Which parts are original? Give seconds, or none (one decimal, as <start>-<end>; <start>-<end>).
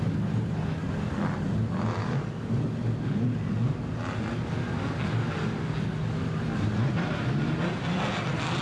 0.0-2.0; 2.6-8.6